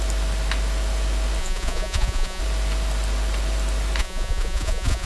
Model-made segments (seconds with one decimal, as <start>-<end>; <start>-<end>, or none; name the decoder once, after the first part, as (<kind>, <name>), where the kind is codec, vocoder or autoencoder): 1.4-2.4 (vocoder, Vocos); 4.0-5.1